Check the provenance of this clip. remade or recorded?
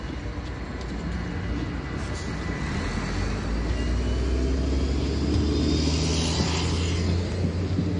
recorded